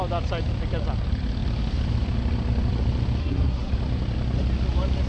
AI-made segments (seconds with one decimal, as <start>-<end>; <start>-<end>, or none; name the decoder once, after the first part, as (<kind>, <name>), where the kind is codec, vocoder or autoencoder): 3.2-3.7 (codec, SNAC)